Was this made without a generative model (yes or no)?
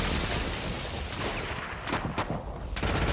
yes